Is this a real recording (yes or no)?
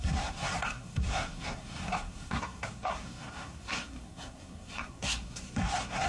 no